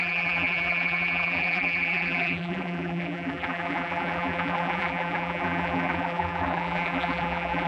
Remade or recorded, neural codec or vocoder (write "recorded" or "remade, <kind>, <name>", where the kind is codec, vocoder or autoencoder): remade, vocoder, BigVGAN v2